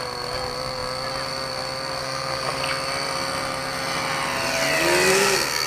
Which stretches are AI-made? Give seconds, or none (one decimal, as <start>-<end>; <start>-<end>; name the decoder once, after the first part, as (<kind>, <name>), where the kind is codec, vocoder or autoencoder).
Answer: 2.0-2.6 (codec, SNAC); 5.1-5.7